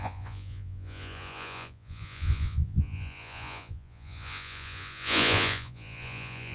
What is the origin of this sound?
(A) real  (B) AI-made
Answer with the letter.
B